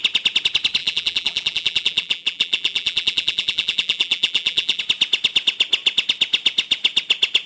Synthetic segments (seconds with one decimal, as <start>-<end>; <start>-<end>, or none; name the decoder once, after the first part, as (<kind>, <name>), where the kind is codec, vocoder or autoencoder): 0.8-4.8 (vocoder, BigVGAN v2)